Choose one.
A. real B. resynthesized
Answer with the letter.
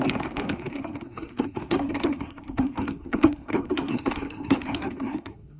B